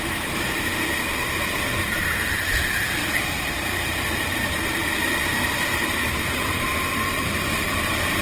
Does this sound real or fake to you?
fake